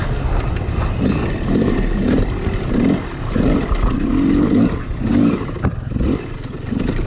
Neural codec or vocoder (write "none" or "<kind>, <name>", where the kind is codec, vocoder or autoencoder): vocoder, BigVGAN v2